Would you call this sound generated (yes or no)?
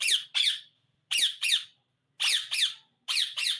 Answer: no